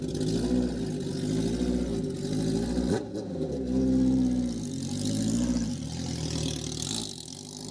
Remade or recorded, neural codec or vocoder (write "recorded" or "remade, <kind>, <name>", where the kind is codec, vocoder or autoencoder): recorded